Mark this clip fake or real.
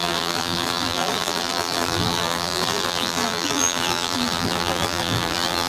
fake